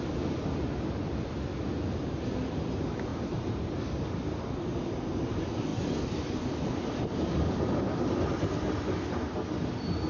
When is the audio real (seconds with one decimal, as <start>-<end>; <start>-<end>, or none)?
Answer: 0.0-10.1